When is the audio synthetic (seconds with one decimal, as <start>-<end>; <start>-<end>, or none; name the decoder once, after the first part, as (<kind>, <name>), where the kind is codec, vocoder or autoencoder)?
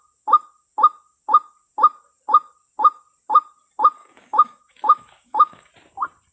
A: 4.0-5.7 (autoencoder, DAC-VAE)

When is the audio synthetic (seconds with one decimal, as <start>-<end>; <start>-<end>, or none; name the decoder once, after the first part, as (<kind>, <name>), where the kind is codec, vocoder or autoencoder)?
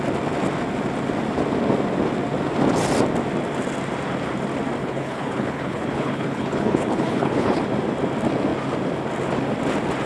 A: 4.8-7.6 (codec, HILCodec)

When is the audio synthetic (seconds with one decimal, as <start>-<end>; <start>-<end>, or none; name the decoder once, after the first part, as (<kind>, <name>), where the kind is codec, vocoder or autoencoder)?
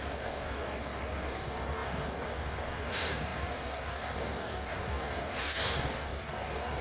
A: 0.0-6.8 (codec, DAC)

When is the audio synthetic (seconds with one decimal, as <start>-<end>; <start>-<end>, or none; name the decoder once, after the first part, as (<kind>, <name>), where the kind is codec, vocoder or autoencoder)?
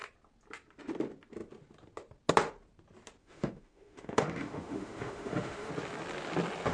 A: 3.2-5.7 (autoencoder, DAC-VAE)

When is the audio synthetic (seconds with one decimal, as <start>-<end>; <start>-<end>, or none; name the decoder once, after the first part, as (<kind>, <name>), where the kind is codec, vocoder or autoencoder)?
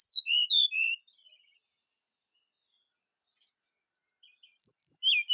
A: none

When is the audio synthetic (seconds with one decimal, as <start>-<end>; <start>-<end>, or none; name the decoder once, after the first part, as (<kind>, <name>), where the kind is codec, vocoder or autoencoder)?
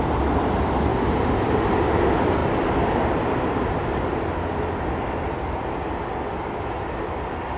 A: none